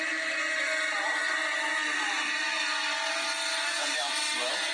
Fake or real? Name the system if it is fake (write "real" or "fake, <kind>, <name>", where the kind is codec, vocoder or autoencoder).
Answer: real